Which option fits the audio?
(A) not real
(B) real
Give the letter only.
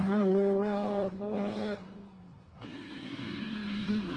A